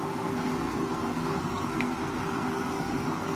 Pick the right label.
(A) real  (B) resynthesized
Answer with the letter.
B